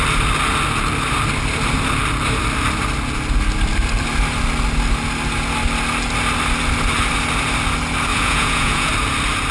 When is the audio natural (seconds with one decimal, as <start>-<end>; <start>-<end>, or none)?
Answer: 0.0-8.1; 8.9-9.5